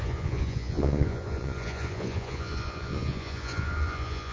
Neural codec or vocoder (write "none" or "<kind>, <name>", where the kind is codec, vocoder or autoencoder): vocoder, Vocos